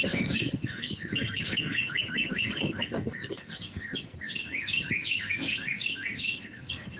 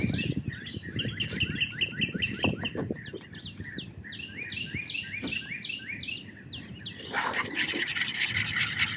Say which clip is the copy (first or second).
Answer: first